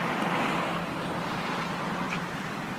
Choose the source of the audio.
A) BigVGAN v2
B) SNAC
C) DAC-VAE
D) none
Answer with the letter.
D